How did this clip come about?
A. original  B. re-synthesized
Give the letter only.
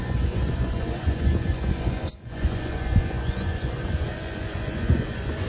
B